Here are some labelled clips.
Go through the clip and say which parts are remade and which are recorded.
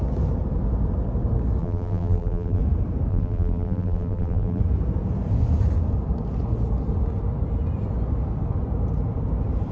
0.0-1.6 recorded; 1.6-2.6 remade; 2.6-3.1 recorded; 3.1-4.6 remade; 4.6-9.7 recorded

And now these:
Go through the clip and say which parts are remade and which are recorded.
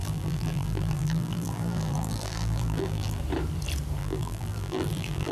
0.0-3.2 remade; 3.2-4.0 recorded; 4.0-5.3 remade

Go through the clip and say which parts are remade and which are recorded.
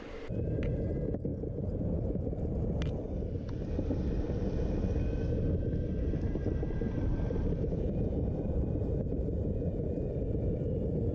0.0-1.3 remade; 1.3-6.1 recorded; 6.1-11.1 remade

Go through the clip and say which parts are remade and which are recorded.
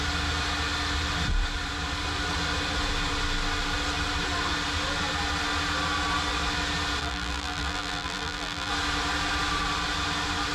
0.0-7.0 recorded; 7.0-8.7 remade; 8.7-10.5 recorded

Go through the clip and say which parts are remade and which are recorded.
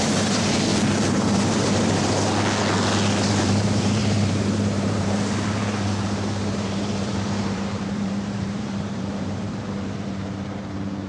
0.0-0.7 remade; 0.7-3.4 recorded; 3.4-11.1 remade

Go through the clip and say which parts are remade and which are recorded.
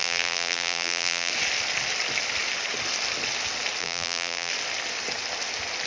0.0-1.3 remade; 1.3-3.8 recorded; 3.8-4.5 remade; 4.5-5.9 recorded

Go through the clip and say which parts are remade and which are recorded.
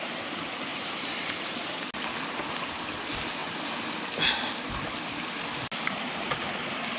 0.0-0.7 recorded; 0.7-1.6 remade; 1.6-7.0 recorded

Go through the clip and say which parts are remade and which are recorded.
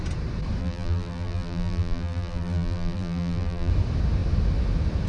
0.0-0.6 recorded; 0.6-3.7 remade; 3.7-5.1 recorded